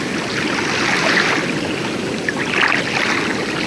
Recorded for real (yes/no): yes